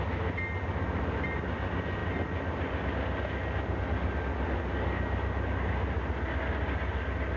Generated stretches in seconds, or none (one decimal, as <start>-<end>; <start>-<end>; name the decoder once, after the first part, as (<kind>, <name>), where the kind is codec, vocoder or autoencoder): none